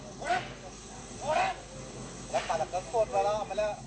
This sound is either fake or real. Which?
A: real